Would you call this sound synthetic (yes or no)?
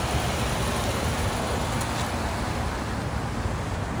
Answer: no